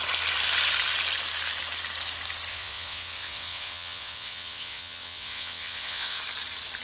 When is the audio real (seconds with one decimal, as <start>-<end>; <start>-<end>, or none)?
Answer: 0.0-2.5; 6.2-6.8